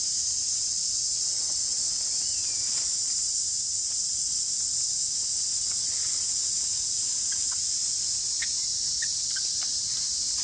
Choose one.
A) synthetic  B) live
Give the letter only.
B